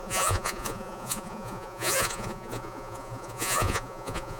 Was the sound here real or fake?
fake